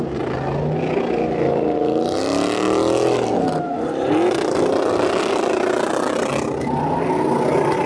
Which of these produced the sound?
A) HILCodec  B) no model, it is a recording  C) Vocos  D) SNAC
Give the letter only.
B